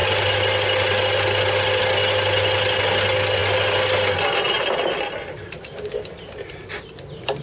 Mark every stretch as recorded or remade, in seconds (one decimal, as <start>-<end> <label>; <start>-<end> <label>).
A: 0.0-7.4 recorded